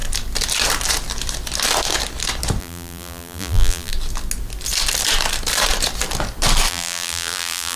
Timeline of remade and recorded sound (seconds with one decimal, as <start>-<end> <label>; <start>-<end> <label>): 0.0-2.6 recorded; 2.6-3.9 remade; 3.9-6.7 recorded; 6.7-7.8 remade